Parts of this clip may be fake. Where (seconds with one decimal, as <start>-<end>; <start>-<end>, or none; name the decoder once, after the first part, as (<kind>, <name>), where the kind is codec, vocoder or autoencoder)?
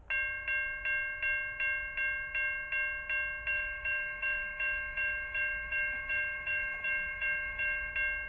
3.5-7.9 (autoencoder, DAC-VAE)